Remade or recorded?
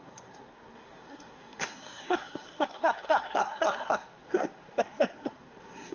remade